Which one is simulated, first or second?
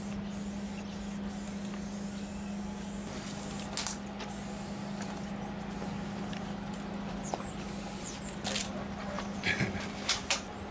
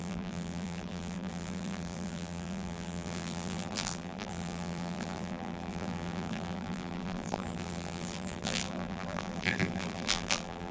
second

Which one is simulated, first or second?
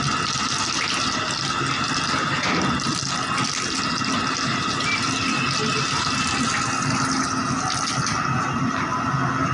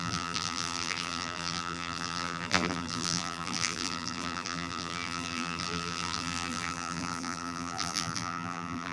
second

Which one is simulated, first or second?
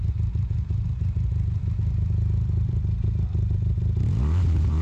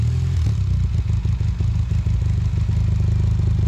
first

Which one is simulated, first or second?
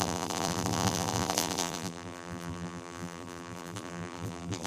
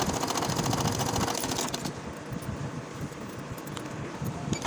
first